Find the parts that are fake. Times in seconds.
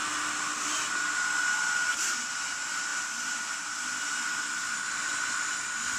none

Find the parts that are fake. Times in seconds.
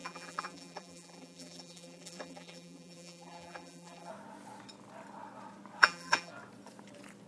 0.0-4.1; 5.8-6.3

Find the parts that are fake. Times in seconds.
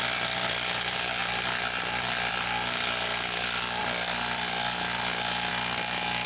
none